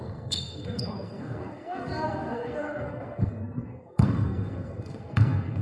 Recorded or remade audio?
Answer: remade